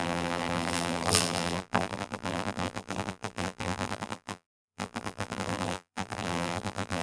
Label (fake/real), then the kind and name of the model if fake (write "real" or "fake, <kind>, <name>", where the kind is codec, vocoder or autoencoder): fake, vocoder, BigVGAN v2